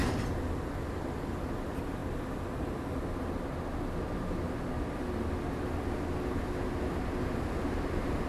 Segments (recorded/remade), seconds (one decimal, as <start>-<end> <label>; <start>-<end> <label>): 0.0-0.8 remade; 0.8-8.3 recorded